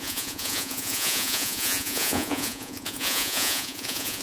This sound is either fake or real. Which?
fake